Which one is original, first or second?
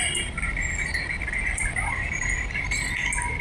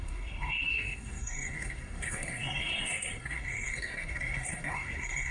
first